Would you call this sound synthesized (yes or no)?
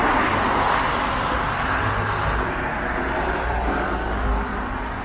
no